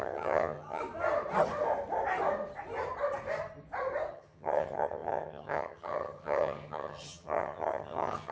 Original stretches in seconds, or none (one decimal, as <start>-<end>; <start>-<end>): 0.8-4.1